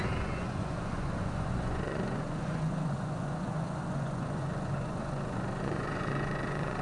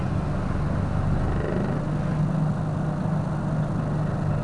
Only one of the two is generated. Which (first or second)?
first